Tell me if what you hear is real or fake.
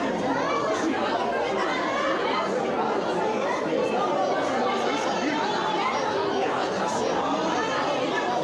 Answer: real